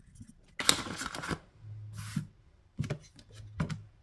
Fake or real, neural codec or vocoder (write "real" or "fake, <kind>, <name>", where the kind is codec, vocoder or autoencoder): real